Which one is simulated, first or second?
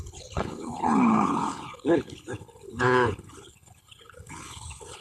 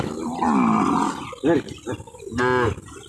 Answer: first